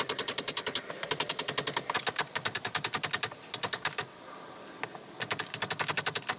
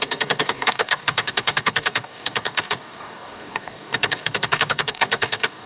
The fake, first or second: second